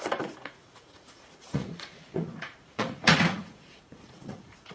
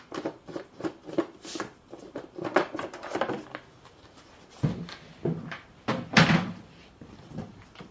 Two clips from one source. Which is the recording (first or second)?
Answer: second